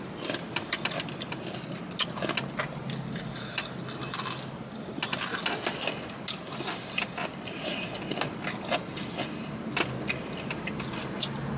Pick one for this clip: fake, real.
real